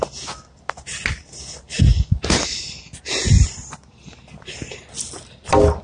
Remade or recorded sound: recorded